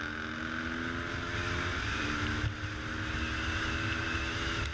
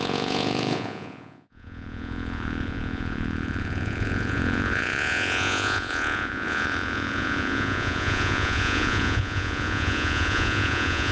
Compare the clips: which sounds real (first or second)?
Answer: first